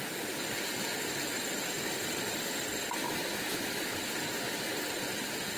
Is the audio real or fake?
real